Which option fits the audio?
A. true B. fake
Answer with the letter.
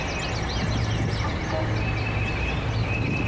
A